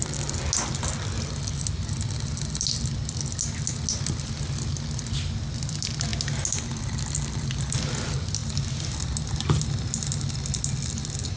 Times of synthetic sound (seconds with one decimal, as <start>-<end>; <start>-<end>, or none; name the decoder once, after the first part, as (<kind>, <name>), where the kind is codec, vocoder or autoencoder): none